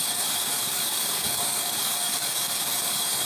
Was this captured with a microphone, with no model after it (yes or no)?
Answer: no